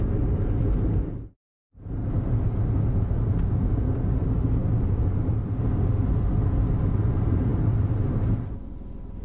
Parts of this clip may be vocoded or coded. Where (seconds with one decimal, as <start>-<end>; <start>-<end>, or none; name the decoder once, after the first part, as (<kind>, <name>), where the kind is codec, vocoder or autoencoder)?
0.0-2.0 (vocoder, BigVGAN v2); 6.8-7.5